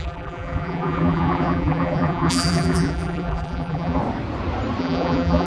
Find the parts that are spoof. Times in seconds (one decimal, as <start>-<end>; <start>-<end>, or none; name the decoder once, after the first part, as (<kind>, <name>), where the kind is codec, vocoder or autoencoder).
0.0-4.0 (vocoder, BigVGAN v2); 4.8-5.5